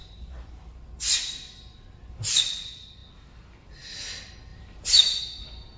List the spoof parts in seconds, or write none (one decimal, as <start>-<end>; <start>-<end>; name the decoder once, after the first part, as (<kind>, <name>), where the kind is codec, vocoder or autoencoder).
0.0-2.3 (vocoder, BigVGAN v2); 4.5-5.2